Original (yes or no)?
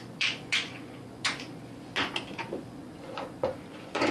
no